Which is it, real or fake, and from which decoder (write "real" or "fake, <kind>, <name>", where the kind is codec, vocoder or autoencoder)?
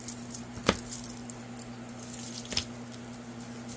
real